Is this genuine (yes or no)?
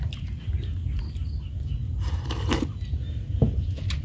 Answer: yes